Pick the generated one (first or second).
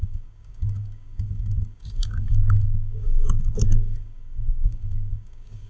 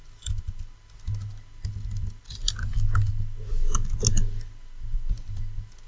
first